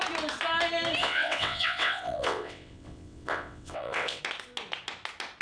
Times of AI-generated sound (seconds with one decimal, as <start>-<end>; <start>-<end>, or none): 1.0-4.2